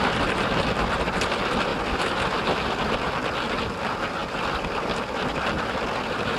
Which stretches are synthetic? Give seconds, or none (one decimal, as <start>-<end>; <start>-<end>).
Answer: 4.2-5.6